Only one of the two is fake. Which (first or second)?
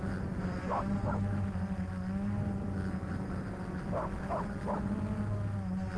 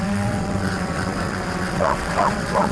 second